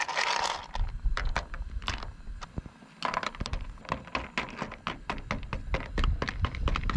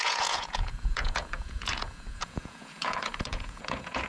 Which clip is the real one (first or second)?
first